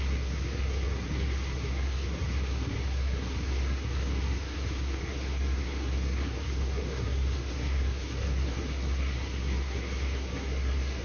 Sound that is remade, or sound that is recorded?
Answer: remade